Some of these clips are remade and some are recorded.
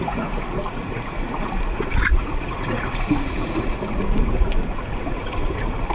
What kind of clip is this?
remade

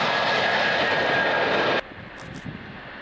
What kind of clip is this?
recorded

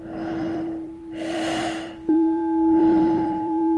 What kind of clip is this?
remade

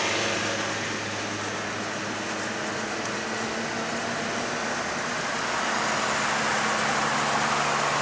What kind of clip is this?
recorded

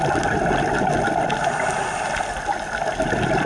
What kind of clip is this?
recorded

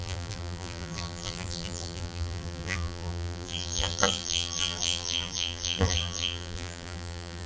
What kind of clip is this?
remade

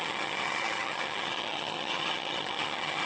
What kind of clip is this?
remade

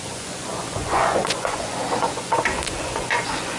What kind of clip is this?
remade